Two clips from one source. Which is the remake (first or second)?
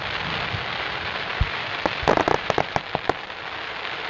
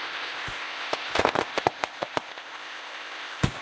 second